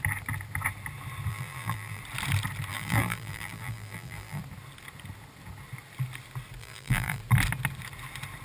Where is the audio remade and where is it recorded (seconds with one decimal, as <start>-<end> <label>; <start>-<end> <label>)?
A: 0.0-1.3 recorded; 1.3-2.0 remade; 2.0-2.7 recorded; 2.7-4.4 remade; 4.4-6.6 recorded; 6.6-7.2 remade; 7.2-8.4 recorded